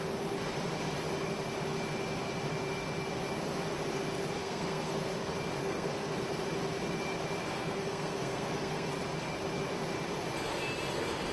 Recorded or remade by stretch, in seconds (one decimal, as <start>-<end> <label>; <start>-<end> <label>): 0.0-4.4 recorded; 4.4-5.1 remade; 5.1-5.6 recorded; 5.6-6.1 remade; 6.1-7.4 recorded; 7.4-8.9 remade; 8.9-11.3 recorded